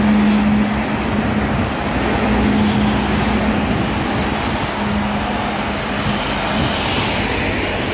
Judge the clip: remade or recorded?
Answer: recorded